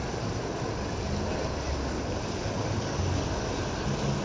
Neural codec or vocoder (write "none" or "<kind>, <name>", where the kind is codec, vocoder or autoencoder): none